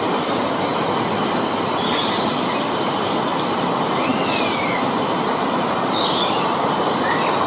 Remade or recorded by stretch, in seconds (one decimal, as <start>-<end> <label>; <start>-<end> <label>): 0.0-7.5 recorded

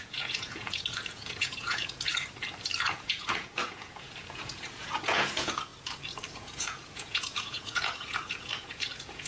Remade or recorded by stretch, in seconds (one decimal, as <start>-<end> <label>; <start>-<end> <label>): 0.0-2.1 remade; 2.1-2.8 recorded; 2.8-5.7 remade; 5.7-6.3 recorded; 6.3-9.3 remade